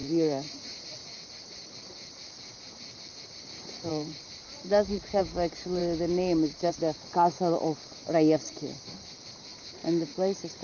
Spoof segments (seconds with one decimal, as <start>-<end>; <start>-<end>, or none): 0.0-0.8; 3.9-5.2; 9.8-10.6